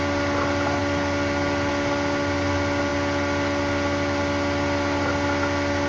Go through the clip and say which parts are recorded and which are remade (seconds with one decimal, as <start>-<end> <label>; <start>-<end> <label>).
0.0-5.9 recorded